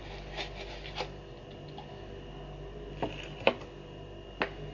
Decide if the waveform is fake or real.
real